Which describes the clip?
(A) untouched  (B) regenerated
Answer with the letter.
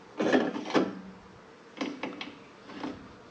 A